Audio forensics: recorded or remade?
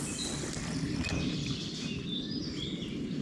recorded